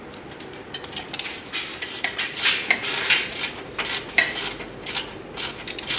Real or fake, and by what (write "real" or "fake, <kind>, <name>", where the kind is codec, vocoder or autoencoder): real